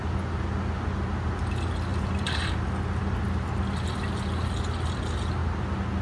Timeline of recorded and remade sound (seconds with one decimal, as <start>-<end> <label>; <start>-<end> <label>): 0.0-1.9 recorded; 1.9-2.5 remade; 2.5-6.0 recorded